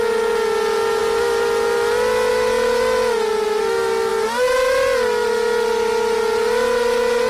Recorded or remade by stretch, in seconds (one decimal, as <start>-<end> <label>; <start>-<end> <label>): 0.0-7.3 recorded